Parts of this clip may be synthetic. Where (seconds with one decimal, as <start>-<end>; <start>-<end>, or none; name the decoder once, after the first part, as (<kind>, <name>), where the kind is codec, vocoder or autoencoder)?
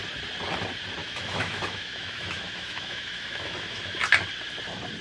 1.0-4.0 (autoencoder, DAC-VAE)